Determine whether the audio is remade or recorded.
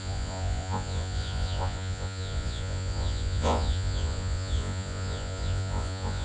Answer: remade